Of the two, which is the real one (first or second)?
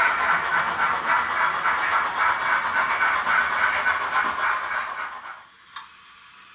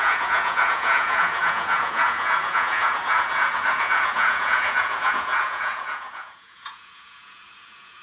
first